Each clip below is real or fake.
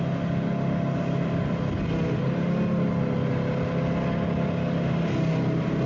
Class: real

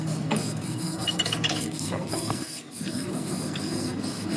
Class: fake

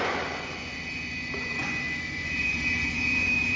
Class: fake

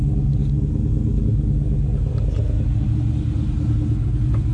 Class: real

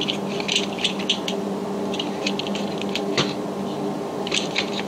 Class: real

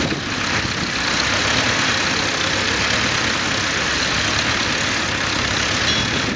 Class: real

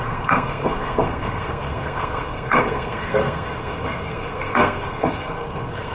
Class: fake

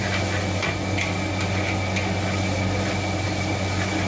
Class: real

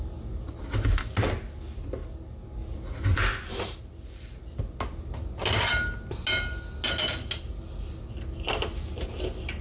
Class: real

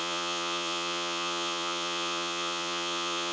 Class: fake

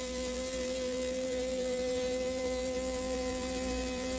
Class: fake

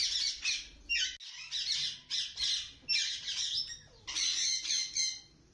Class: real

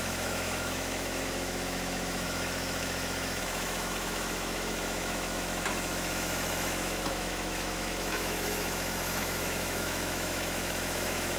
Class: fake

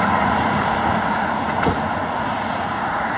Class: fake